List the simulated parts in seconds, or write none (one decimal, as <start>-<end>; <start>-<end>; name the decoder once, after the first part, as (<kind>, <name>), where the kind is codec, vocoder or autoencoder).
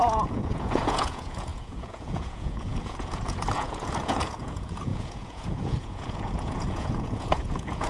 0.0-7.9 (vocoder, Vocos)